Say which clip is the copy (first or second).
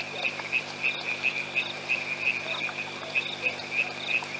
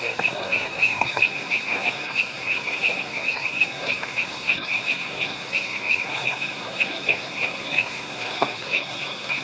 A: second